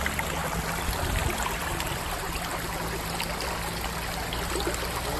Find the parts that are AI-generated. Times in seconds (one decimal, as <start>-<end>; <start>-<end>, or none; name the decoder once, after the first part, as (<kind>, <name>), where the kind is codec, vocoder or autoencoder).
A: none